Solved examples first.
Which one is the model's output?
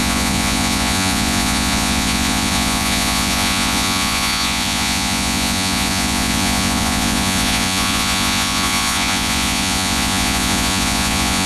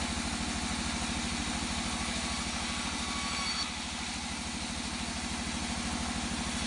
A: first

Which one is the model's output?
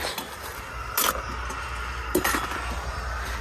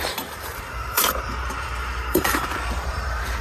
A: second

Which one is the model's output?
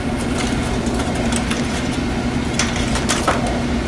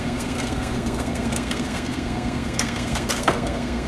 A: second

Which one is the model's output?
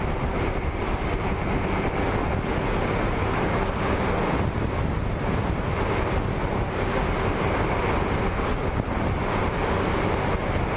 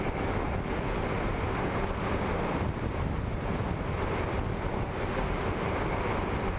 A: second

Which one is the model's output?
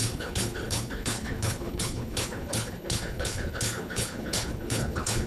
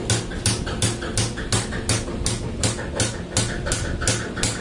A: first